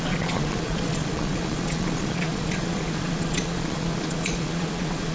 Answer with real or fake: fake